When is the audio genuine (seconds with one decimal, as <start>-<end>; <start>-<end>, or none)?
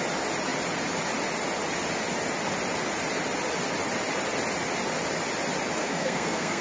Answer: 0.0-5.8